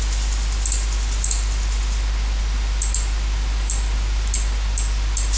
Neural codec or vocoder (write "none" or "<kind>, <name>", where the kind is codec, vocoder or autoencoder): none